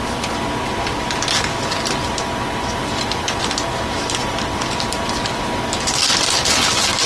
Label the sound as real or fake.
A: real